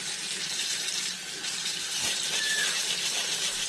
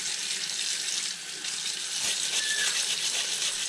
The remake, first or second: first